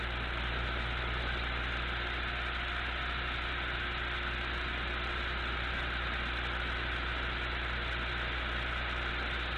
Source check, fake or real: real